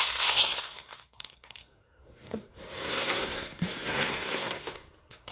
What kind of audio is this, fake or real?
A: fake